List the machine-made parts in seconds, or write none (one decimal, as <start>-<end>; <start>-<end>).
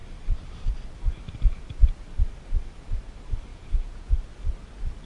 3.5-4.2